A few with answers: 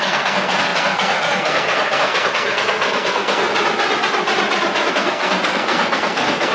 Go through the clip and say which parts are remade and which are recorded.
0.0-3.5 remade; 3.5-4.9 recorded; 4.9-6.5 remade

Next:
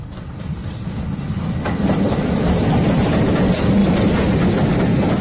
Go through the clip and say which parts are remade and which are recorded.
0.0-3.8 remade; 3.8-5.2 recorded

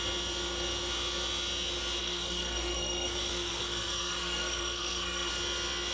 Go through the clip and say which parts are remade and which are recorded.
0.0-2.0 recorded; 2.0-5.3 remade; 5.3-5.9 recorded

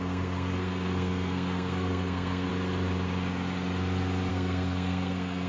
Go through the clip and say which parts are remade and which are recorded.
0.0-2.5 remade; 2.5-4.3 recorded; 4.3-5.5 remade

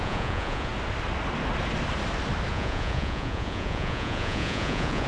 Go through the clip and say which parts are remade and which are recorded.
0.0-0.7 remade; 0.7-2.5 recorded; 2.5-5.1 remade

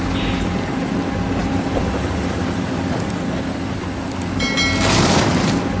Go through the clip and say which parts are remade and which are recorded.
0.0-1.4 recorded; 1.4-3.8 remade; 3.8-5.8 recorded

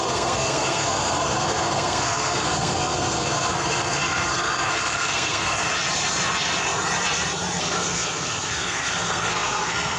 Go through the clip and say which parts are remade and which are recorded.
0.0-5.7 remade; 5.7-7.6 recorded; 7.6-10.0 remade

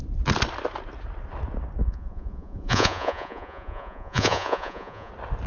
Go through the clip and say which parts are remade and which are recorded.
0.0-1.8 recorded; 1.8-5.1 remade; 5.1-5.5 recorded